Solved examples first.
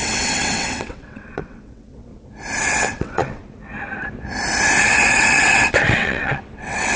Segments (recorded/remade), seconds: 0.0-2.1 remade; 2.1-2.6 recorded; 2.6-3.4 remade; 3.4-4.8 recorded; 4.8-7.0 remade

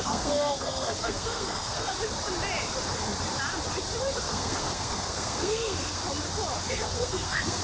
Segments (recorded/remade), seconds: 0.0-1.9 remade; 1.9-4.2 recorded; 4.2-6.0 remade; 6.0-6.7 recorded; 6.7-7.6 remade

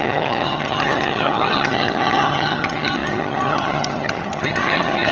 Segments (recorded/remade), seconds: 0.0-5.1 remade